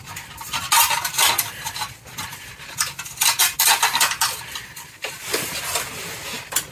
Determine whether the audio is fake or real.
real